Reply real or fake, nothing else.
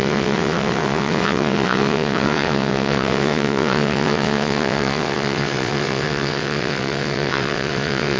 fake